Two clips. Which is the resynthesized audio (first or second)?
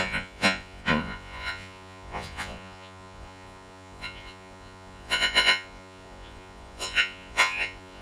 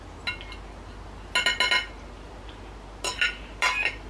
first